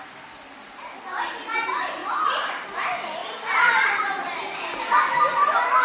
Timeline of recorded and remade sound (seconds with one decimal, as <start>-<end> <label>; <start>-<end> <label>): 0.0-2.0 recorded; 2.0-2.5 remade; 2.5-5.8 recorded